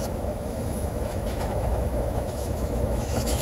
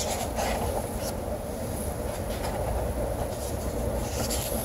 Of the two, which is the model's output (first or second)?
first